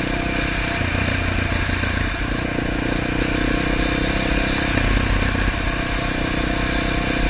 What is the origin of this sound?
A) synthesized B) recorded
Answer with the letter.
B